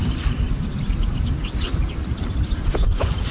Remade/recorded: recorded